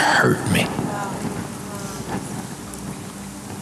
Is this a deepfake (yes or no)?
no